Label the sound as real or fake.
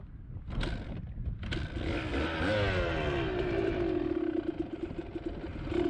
real